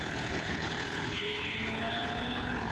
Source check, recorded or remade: remade